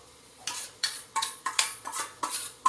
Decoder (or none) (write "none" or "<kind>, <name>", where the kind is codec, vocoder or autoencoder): vocoder, Vocos